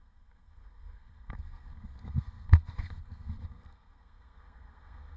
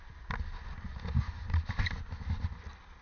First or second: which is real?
second